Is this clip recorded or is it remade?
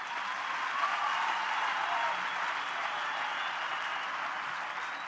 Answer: recorded